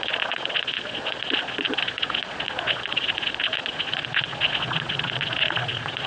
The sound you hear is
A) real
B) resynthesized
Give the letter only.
B